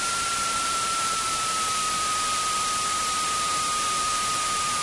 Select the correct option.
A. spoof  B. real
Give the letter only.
B